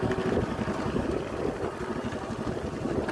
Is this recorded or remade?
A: recorded